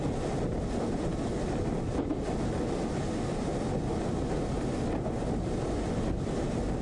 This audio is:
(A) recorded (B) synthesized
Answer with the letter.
A